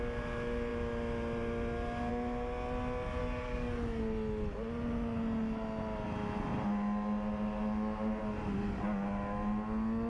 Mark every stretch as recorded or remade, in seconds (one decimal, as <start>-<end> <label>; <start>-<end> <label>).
0.0-3.2 recorded; 3.2-4.0 remade; 4.0-10.1 recorded